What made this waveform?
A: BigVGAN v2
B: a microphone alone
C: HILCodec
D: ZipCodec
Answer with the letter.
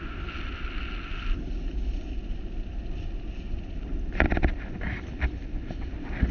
B